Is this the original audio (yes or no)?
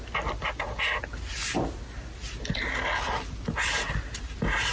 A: yes